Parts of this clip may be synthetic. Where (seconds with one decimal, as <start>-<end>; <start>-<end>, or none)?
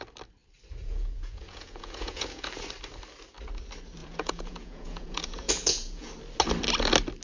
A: 0.8-2.5; 4.0-6.1